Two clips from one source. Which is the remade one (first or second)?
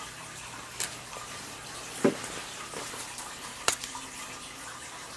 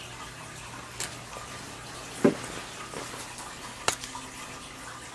first